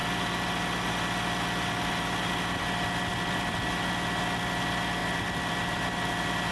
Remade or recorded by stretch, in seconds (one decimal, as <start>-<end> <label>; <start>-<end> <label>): 0.0-6.5 recorded